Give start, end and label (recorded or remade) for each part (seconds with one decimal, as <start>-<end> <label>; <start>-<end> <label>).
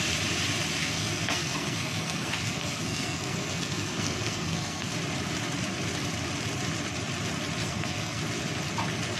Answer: 0.0-0.8 recorded; 0.8-4.9 remade; 4.9-7.6 recorded; 7.6-8.2 remade; 8.2-9.2 recorded